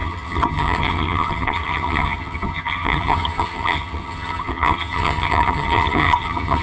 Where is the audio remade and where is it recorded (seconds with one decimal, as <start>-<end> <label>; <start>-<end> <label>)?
0.0-6.6 remade